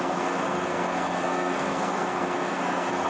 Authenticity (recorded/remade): remade